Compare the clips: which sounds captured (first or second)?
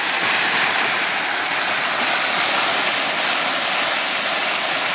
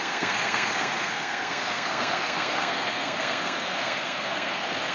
first